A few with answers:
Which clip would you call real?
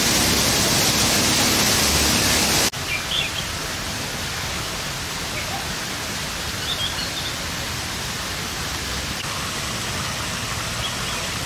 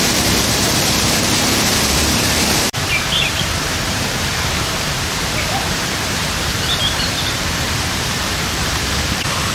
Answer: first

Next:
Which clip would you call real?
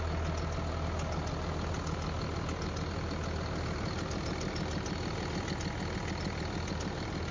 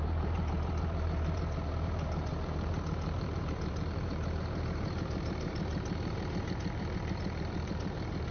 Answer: first